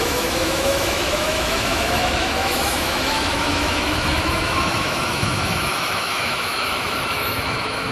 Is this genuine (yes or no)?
no